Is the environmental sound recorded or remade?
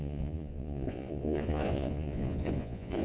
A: remade